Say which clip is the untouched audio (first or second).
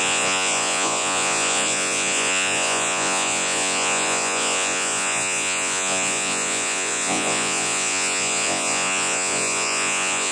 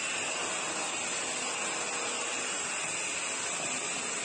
second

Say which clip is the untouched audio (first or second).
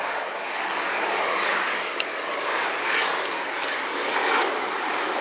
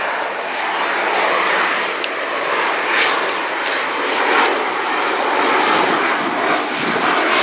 second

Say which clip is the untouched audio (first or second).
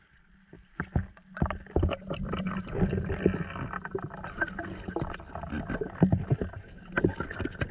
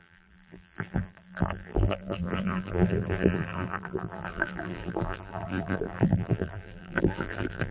first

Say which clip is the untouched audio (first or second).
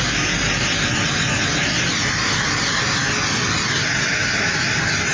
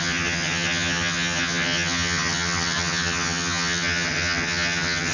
first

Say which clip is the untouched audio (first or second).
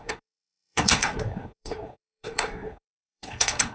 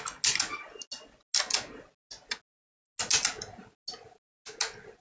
second